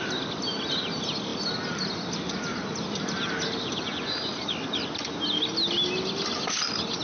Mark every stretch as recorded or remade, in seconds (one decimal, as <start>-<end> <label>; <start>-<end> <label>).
0.0-7.0 recorded